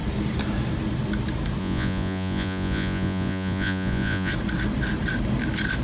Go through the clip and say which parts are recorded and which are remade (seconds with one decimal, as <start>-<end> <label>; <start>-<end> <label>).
0.0-1.6 recorded; 1.6-4.3 remade; 4.3-5.8 recorded